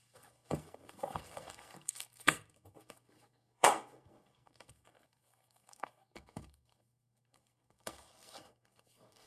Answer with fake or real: fake